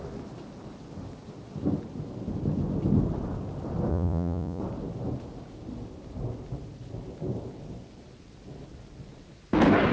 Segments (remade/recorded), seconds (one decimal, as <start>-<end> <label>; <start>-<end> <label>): 0.0-3.9 recorded; 3.9-4.6 remade; 4.6-9.9 recorded